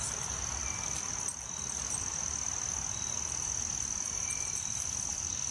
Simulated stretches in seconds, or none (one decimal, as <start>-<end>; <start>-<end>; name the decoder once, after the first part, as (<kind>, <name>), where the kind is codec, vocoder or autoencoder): none